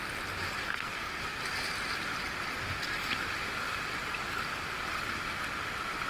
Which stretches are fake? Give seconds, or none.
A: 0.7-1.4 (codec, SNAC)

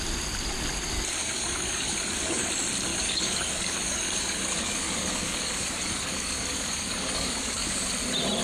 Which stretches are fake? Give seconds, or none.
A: 1.2-2.5 (codec, DAC); 2.9-7.8

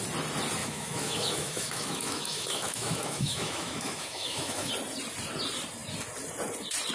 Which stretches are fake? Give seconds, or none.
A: 0.6-4.7 (autoencoder, DAC-VAE)

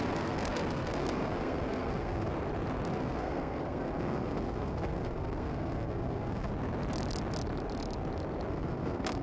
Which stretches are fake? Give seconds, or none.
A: 0.0-2.3 (codec, SNAC); 2.9-6.5; 8.5-9.2